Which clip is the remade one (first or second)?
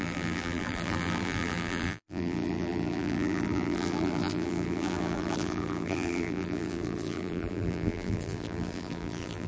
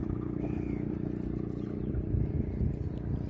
first